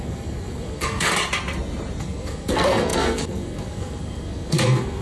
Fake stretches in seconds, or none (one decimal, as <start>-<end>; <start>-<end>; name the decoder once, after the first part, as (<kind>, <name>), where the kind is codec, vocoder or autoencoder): 0.0-1.1 (codec, SNAC); 2.0-5.0